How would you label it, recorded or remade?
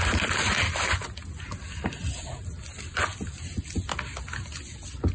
recorded